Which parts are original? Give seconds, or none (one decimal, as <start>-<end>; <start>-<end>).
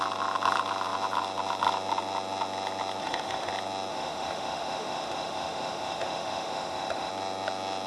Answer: 0.0-3.0; 3.5-3.9; 7.1-7.9